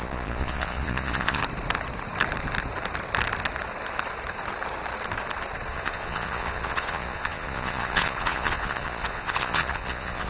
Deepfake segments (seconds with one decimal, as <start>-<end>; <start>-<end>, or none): 0.0-1.4; 5.7-10.3